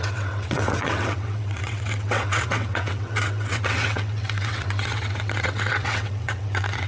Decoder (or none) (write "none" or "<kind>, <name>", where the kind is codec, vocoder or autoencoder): vocoder, WaveNeXt